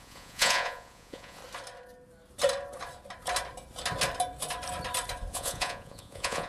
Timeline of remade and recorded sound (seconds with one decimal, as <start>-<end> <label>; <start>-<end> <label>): 0.0-1.4 remade; 1.4-5.3 recorded; 5.3-6.5 remade